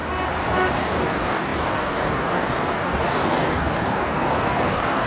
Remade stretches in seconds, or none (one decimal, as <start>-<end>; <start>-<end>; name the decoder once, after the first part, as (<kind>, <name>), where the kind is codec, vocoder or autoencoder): 0.8-5.1 (codec, DAC)